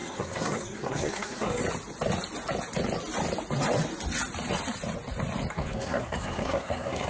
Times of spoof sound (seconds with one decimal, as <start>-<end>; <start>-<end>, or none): 0.0-1.6; 5.5-7.1